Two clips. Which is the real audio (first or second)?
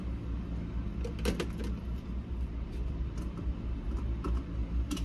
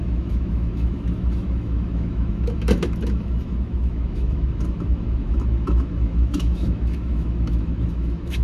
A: first